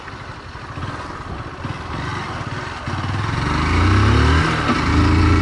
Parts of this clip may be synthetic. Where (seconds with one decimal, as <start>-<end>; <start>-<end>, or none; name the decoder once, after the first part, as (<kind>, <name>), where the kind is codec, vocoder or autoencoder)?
none